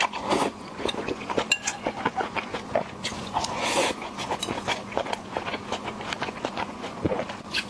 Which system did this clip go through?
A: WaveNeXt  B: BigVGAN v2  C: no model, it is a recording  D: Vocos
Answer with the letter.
D